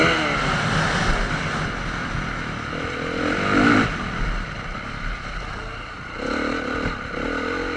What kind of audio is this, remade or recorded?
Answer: recorded